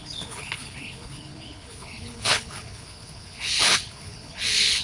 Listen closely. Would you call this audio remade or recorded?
remade